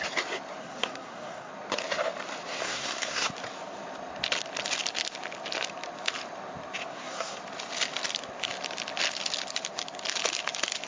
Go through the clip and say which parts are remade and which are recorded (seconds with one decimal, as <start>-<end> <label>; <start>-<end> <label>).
0.0-0.6 recorded; 0.6-1.5 remade; 1.5-2.6 recorded; 2.6-3.3 remade; 3.3-6.9 recorded; 6.9-7.4 remade; 7.4-10.9 recorded